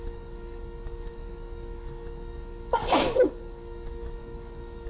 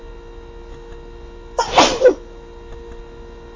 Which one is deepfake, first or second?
first